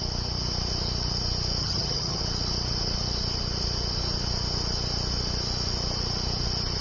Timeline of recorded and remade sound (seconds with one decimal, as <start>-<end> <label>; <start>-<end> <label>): 0.0-1.6 recorded; 1.6-2.2 remade; 2.2-6.8 recorded